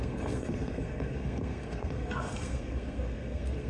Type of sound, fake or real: fake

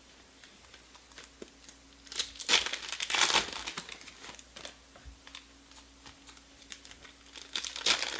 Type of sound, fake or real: real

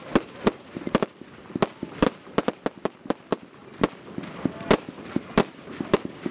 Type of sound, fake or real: real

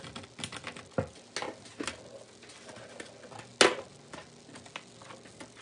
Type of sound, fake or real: real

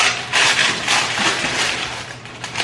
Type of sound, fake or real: fake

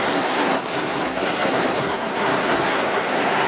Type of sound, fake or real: fake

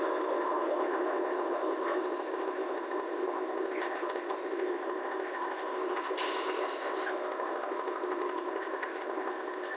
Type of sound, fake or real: fake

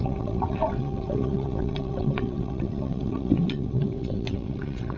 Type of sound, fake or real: fake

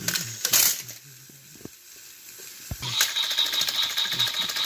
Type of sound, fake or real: real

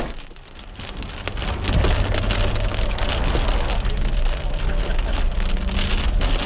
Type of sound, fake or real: real